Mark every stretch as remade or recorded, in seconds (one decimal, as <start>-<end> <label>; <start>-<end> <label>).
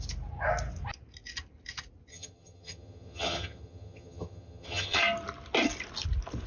0.0-2.1 recorded; 2.1-5.0 remade; 5.0-6.5 recorded